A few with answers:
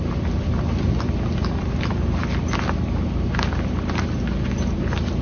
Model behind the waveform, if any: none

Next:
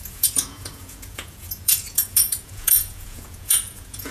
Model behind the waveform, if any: vocoder, Vocos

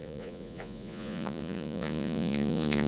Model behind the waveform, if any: vocoder, Vocos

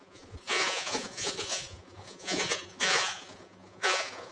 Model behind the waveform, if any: vocoder, Vocos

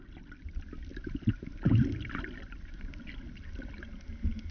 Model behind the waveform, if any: none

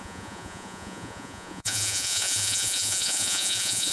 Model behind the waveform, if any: vocoder, Vocos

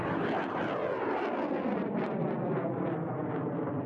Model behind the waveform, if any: none